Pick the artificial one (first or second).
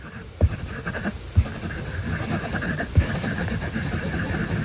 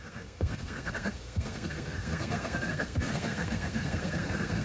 second